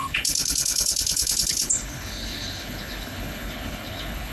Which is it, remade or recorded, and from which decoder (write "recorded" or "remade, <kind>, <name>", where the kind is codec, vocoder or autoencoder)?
remade, codec, HILCodec